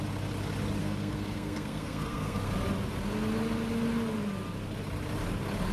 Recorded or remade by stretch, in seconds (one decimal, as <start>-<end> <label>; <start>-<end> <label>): 0.0-0.8 recorded; 0.8-2.5 remade; 2.5-5.7 recorded